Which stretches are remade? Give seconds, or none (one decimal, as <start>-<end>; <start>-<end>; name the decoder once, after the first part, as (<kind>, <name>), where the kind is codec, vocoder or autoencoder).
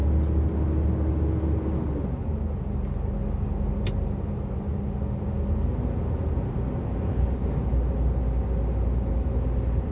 none